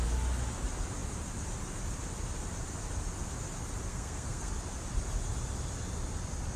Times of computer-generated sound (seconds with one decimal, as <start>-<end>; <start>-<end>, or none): 3.9-4.5